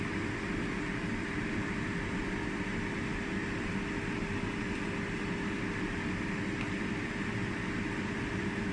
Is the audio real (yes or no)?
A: yes